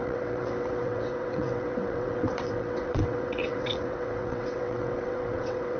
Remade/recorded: remade